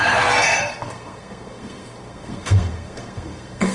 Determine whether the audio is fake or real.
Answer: fake